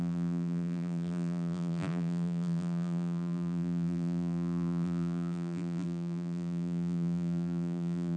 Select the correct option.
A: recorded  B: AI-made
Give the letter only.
B